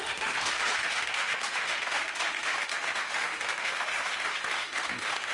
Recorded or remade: remade